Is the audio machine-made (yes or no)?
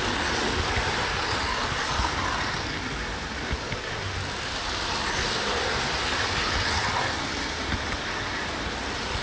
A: no